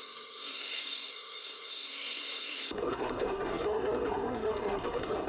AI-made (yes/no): yes